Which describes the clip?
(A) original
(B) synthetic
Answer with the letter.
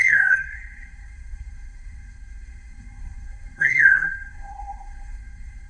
B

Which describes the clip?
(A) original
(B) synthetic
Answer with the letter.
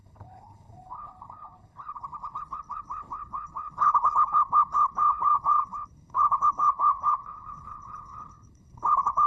B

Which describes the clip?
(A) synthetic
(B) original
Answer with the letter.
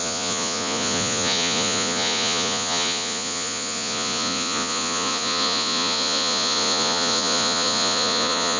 A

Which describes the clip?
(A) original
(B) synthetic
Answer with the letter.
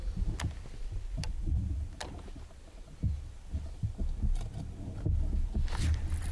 A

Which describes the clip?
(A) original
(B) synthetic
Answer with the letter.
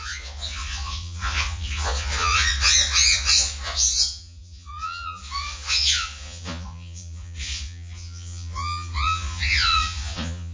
B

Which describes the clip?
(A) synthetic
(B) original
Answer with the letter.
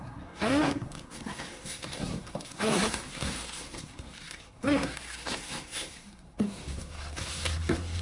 A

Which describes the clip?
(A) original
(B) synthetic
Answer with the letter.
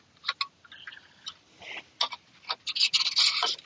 A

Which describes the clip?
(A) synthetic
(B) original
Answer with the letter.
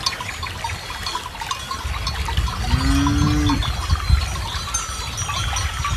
B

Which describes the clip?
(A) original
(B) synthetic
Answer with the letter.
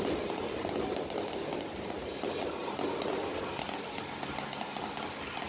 A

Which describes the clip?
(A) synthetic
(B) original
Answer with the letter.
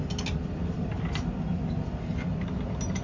B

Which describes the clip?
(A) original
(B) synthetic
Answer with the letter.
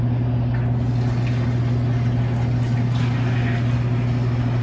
A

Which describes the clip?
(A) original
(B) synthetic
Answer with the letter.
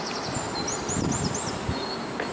A